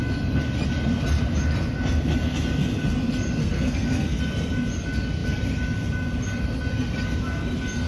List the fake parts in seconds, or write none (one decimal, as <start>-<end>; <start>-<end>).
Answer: 3.4-4.2